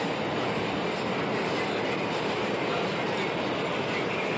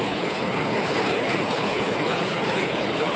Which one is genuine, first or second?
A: first